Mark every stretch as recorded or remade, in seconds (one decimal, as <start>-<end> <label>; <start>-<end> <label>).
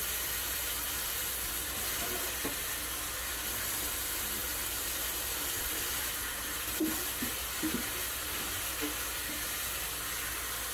0.0-10.7 recorded